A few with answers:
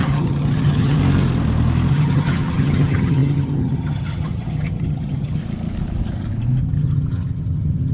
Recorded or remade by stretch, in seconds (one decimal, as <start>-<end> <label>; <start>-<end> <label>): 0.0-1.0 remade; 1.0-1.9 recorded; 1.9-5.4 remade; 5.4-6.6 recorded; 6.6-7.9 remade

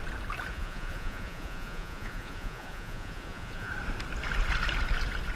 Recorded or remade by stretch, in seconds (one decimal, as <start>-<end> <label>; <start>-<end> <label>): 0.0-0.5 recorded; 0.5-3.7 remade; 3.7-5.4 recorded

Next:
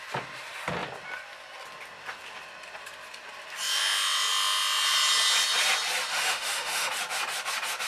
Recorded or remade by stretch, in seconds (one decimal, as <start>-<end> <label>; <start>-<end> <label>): 0.0-6.1 recorded; 6.1-6.9 remade; 6.9-7.9 recorded

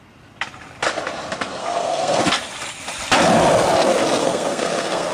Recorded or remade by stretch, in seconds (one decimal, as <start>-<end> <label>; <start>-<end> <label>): 0.0-1.6 recorded; 1.6-2.2 remade; 2.2-4.2 recorded; 4.2-5.1 remade

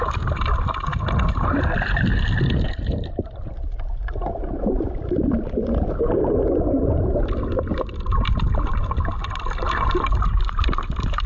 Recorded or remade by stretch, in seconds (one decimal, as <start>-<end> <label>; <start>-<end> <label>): 0.0-2.1 remade; 2.1-3.0 recorded; 3.0-9.2 remade; 9.2-9.9 recorded; 9.9-11.3 remade

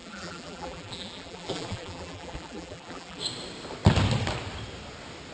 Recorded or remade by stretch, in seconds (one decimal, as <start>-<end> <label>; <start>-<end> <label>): 0.0-3.2 remade; 3.2-5.3 recorded

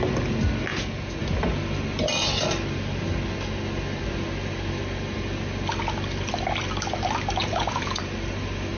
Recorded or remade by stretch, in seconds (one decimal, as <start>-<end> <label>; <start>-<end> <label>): 0.0-0.7 recorded; 0.7-1.2 remade; 1.2-7.4 recorded; 7.4-8.0 remade; 8.0-8.8 recorded

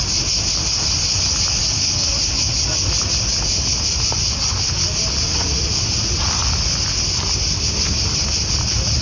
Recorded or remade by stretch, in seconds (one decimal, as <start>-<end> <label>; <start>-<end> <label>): 0.0-9.0 recorded